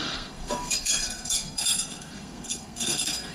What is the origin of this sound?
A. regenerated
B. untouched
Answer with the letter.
A